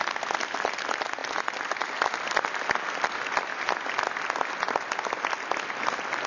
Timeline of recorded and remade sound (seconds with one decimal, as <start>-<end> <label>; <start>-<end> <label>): 0.0-6.3 recorded